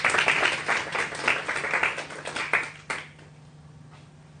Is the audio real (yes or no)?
yes